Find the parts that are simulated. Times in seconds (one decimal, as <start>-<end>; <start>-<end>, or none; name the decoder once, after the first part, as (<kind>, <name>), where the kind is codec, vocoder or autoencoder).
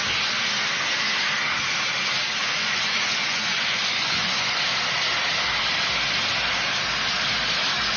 2.4-4.6 (vocoder, Vocos)